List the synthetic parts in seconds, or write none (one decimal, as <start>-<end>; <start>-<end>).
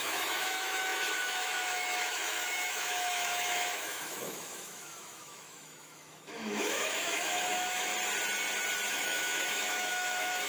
0.0-7.9; 8.9-10.5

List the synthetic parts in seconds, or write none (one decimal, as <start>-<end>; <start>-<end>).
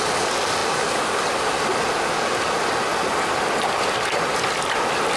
none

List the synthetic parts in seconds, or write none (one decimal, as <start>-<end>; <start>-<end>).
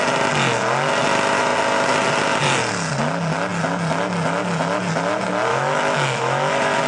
5.5-6.5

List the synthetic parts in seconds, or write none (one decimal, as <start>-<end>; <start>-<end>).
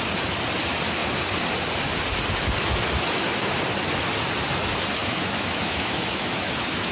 5.0-6.9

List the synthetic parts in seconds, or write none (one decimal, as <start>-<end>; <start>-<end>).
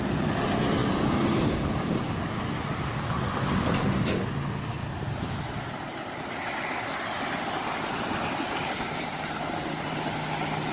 none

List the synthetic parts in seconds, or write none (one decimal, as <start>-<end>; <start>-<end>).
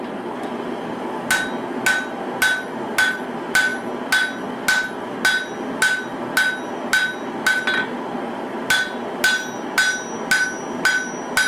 none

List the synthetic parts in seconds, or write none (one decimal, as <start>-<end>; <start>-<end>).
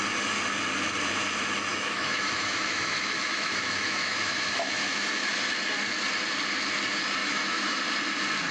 1.7-5.3; 7.2-7.8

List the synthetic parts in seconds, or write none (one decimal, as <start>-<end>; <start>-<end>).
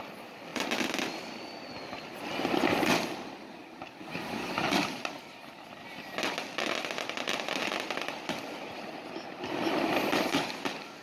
none